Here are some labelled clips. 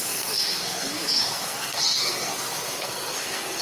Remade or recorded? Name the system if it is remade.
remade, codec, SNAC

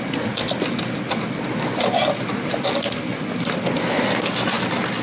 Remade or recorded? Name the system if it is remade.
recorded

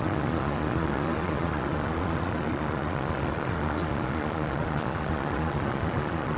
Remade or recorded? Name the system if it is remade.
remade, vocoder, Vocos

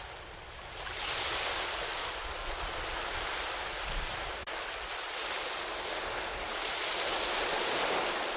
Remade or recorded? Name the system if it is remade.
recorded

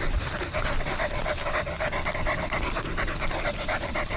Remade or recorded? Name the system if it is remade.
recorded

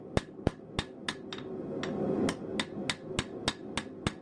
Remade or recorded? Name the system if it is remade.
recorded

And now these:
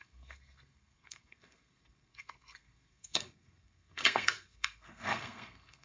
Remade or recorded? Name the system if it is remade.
remade, codec, SNAC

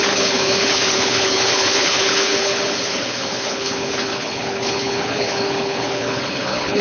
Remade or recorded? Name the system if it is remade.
remade, codec, HILCodec